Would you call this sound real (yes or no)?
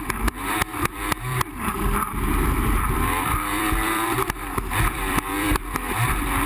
no